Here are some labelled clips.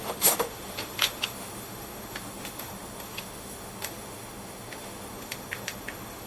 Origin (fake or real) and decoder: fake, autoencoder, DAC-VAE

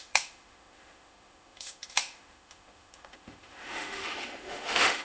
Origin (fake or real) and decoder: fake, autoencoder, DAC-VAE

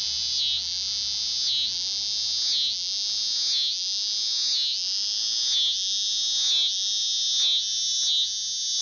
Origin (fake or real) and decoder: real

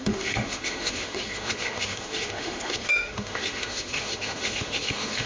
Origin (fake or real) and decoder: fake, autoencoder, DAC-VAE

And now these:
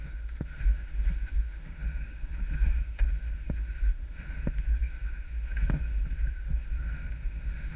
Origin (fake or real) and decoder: fake, autoencoder, DAC-VAE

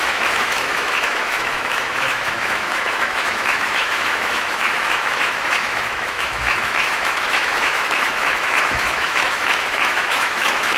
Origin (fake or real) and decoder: fake, autoencoder, DAC-VAE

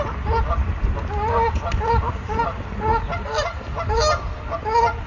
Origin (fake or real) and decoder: real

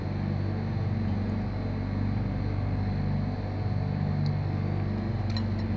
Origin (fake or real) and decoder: real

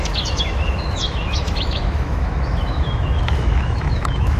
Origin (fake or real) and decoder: fake, autoencoder, DAC-VAE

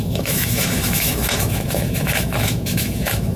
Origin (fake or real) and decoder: fake, autoencoder, DAC-VAE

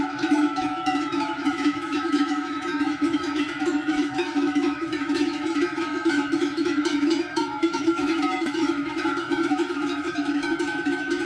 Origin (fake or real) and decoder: fake, autoencoder, DAC-VAE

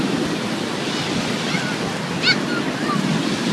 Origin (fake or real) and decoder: real